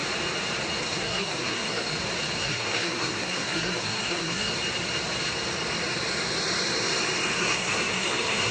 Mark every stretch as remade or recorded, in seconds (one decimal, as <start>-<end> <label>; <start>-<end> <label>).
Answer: 0.0-0.8 recorded; 0.8-1.9 remade; 1.9-2.4 recorded; 2.4-4.5 remade; 4.5-7.4 recorded; 7.4-8.5 remade